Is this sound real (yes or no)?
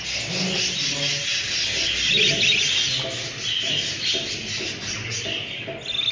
yes